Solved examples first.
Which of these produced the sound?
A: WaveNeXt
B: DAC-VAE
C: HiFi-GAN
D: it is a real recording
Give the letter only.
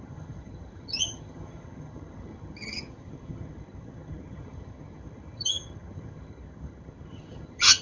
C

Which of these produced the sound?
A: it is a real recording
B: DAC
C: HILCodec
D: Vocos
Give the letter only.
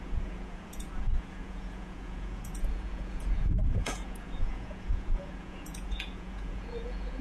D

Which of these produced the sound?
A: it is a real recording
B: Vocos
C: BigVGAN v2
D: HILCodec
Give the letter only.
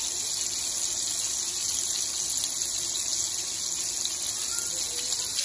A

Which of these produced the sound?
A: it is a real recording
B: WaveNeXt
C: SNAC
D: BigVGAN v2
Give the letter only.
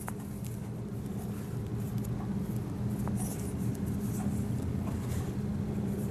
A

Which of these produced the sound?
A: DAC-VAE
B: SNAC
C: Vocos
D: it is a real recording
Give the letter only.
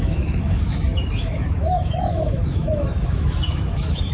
A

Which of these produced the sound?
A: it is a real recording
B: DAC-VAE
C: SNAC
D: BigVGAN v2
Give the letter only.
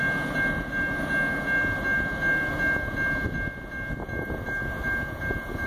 A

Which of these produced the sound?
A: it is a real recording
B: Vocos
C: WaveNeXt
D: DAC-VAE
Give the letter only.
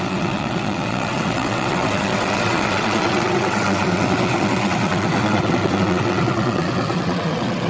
C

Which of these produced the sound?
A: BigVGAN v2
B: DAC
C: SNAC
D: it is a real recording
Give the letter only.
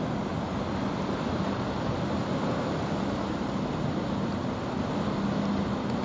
D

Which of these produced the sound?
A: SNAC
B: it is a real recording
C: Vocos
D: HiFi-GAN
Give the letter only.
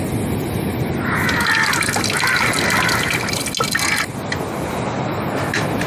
B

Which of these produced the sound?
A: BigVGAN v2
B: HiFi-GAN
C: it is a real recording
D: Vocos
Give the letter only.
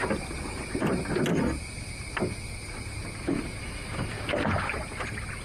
C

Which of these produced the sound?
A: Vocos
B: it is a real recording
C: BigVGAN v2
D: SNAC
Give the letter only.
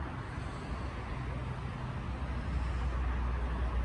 B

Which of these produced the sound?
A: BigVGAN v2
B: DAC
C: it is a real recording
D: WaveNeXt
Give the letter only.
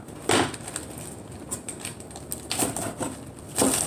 C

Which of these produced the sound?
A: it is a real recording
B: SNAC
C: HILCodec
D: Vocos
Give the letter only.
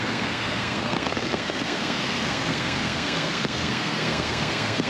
B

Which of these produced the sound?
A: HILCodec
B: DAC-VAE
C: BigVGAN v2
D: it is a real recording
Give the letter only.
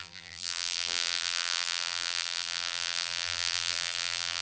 C